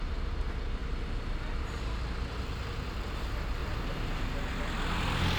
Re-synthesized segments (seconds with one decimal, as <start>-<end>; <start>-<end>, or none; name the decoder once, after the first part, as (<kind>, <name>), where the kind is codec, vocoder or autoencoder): 3.6-4.2 (vocoder, BigVGAN v2)